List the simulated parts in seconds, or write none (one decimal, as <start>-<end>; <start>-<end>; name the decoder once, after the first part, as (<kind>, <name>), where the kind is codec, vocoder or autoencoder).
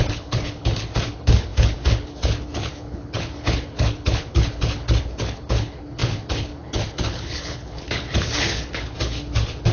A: 0.0-9.7 (codec, HILCodec)